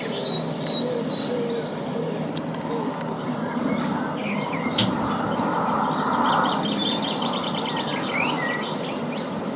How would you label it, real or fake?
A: real